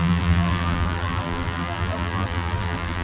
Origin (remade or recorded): remade